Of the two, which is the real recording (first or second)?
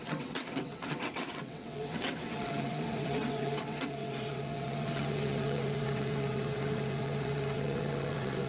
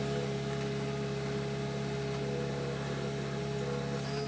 second